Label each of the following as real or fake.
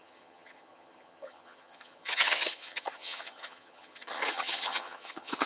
fake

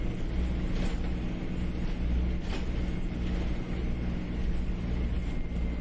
real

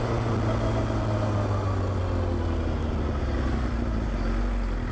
real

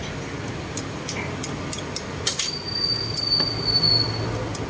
real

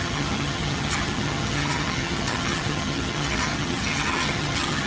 fake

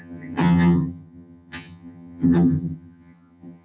fake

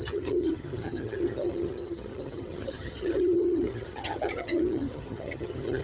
fake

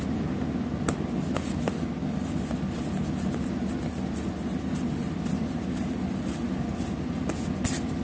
real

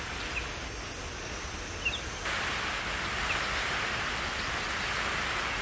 real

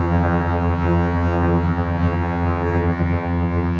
fake